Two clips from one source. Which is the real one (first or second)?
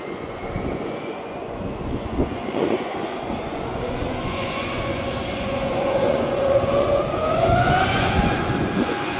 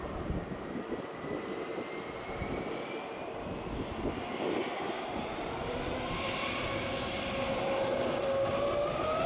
second